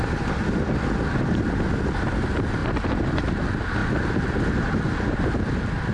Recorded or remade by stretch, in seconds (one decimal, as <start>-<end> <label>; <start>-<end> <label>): 0.0-5.9 recorded